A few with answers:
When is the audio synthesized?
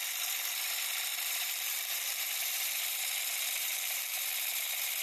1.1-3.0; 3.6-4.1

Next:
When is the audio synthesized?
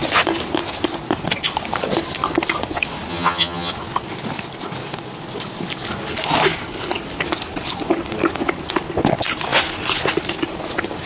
3.1-3.7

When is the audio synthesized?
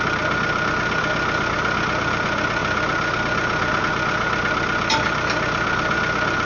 none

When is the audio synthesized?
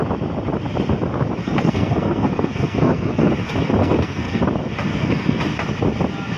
1.4-3.3; 3.8-4.4; 4.9-5.4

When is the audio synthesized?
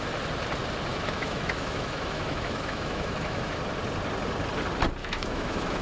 0.9-3.6; 5.0-5.8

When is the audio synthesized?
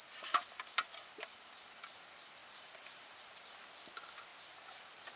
none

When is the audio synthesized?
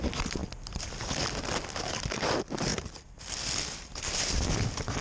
none